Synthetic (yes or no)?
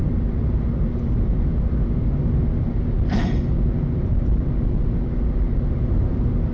no